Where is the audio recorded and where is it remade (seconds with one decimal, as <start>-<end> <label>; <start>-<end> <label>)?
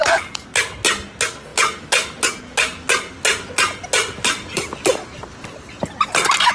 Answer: 0.0-6.5 recorded